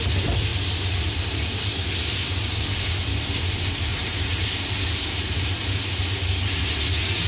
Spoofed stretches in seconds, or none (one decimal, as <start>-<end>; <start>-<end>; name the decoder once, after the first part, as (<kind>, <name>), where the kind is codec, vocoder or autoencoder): 3.9-6.0 (vocoder, BigVGAN v2)